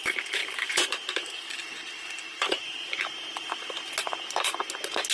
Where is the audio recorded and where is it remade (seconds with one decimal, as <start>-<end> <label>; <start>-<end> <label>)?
0.0-0.4 recorded; 0.4-3.5 remade; 3.5-5.1 recorded